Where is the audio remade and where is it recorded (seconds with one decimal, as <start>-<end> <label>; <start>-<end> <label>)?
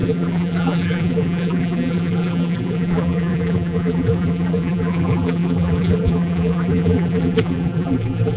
0.0-8.4 remade